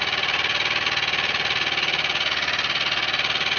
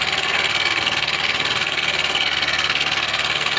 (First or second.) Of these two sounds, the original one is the first